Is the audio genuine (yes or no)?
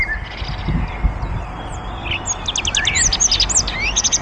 yes